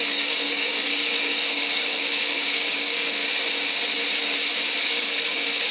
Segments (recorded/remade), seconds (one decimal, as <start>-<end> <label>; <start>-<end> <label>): 0.0-3.2 remade; 3.2-4.8 recorded; 4.8-5.7 remade